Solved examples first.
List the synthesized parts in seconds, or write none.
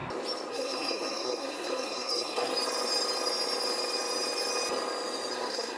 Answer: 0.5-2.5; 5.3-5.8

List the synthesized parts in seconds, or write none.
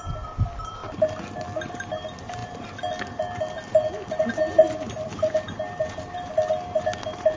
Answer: none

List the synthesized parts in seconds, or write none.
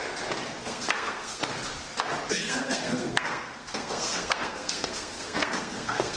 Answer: 0.6-1.4; 2.3-6.2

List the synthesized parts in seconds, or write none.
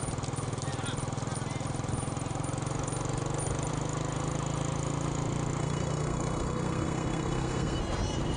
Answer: 5.6-7.8